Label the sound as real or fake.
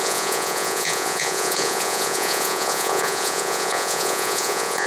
fake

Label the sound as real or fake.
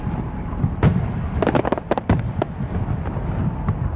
real